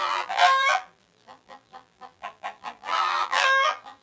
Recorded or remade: remade